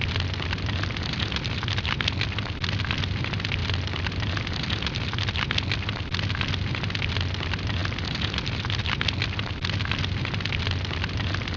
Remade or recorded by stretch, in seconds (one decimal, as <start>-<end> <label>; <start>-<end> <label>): 0.0-11.6 recorded